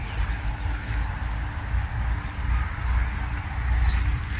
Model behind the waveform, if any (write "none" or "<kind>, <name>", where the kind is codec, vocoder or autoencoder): none